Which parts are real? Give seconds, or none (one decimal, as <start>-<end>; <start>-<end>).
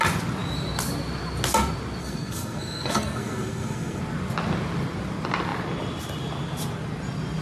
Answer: 0.0-2.0; 4.0-7.4